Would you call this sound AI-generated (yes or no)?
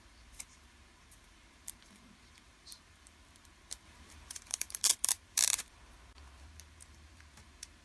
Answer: yes